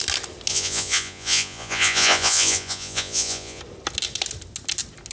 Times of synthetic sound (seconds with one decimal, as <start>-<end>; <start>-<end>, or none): 0.5-3.6